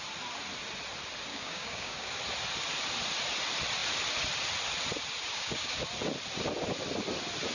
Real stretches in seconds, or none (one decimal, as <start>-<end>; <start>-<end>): 0.0-1.3; 2.1-5.3; 5.8-7.5